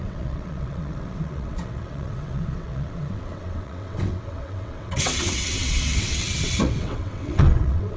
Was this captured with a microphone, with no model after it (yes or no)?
no